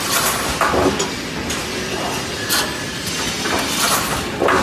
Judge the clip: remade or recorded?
recorded